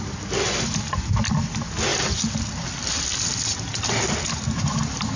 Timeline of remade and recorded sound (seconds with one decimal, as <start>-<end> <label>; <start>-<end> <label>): 0.0-5.2 recorded